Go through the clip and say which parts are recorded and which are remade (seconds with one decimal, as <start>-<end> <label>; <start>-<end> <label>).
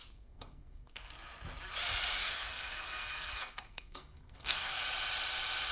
0.0-1.1 remade; 1.1-2.2 recorded; 2.2-4.8 remade; 4.8-5.7 recorded